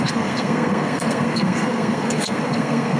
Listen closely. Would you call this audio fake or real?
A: fake